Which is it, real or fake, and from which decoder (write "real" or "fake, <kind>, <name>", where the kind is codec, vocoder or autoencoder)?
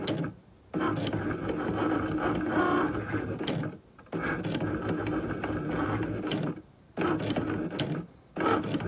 real